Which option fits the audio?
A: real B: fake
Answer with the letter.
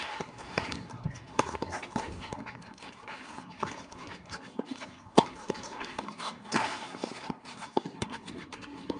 B